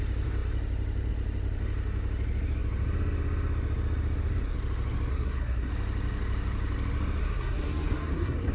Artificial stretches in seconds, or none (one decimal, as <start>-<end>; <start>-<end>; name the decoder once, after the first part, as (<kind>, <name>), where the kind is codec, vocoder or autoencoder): 5.1-5.7 (codec, SNAC); 7.2-8.5